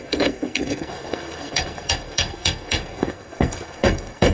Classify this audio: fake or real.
fake